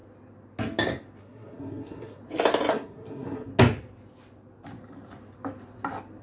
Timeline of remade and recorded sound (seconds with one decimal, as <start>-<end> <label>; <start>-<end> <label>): 0.0-1.2 recorded; 1.2-2.2 remade; 2.2-2.7 recorded; 2.7-3.5 remade; 3.5-6.2 recorded

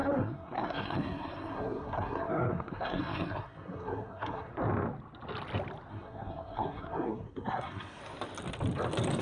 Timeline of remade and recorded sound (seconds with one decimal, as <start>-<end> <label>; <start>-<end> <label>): 0.0-4.5 remade; 4.5-5.9 recorded; 5.9-8.0 remade; 8.0-9.2 recorded

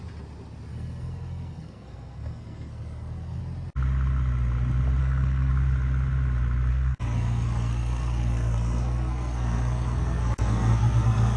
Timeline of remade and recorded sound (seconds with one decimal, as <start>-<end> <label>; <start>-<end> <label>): 0.0-0.7 recorded; 0.7-3.4 remade; 3.4-5.0 recorded; 5.0-5.5 remade; 5.5-6.7 recorded; 6.7-11.4 remade

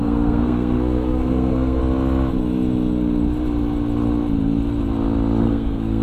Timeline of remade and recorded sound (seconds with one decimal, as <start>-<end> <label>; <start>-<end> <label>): 0.0-1.8 remade; 1.8-5.4 recorded; 5.4-6.0 remade

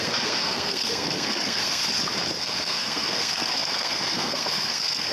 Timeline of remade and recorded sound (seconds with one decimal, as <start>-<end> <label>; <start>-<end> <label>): 0.0-1.8 remade; 1.8-2.4 recorded; 2.4-5.1 remade

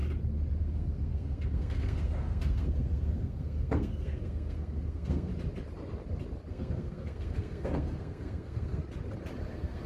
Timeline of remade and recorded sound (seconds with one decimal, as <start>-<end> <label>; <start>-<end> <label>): 0.0-0.6 recorded; 0.6-5.3 remade; 5.3-6.5 recorded; 6.5-8.8 remade; 8.8-9.5 recorded; 9.5-9.9 remade

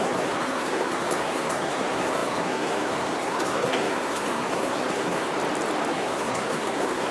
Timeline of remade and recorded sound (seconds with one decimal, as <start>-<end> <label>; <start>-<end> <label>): 0.0-5.3 remade; 5.3-5.9 recorded; 5.9-7.1 remade

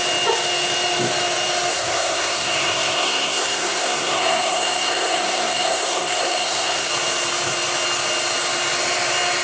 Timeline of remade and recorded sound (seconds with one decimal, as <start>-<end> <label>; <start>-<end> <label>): 0.0-1.7 recorded; 1.7-6.9 remade; 6.9-9.4 recorded